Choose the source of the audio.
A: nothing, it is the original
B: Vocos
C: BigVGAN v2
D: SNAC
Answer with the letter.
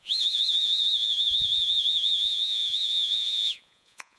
B